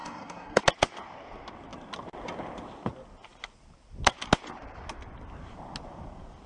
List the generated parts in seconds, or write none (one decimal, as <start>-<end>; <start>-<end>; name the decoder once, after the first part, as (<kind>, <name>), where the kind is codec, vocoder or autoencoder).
0.0-0.6 (codec, SNAC)